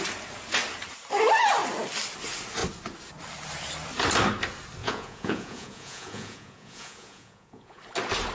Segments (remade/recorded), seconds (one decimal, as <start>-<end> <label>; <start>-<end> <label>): 0.0-4.8 recorded; 4.8-7.8 remade; 7.8-8.3 recorded